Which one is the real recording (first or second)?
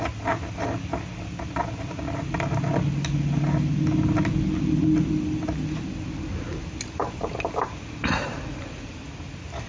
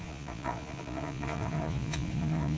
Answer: first